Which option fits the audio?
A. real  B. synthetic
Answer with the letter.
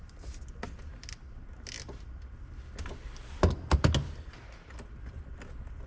A